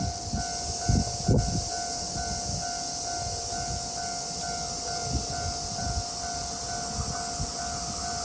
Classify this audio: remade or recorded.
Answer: recorded